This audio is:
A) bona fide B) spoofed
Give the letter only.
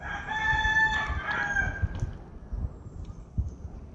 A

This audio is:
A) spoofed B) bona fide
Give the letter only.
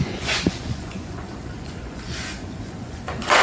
A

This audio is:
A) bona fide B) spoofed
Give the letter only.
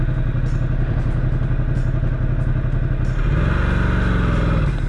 A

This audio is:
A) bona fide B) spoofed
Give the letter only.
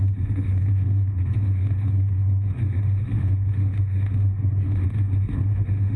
B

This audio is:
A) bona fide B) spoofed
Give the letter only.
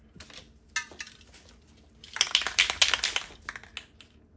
A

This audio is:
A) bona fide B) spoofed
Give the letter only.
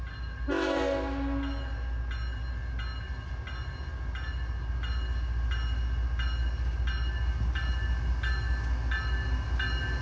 A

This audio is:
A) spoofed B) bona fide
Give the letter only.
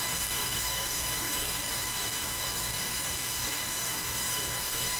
A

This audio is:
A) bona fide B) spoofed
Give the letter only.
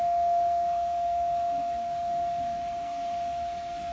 B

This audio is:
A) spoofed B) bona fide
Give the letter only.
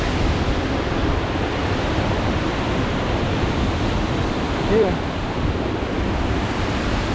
A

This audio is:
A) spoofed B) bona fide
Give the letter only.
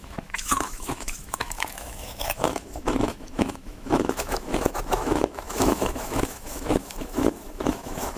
A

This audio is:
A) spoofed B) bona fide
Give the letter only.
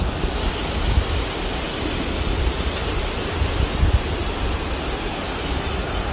B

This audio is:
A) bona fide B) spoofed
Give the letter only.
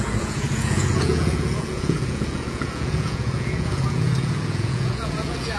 B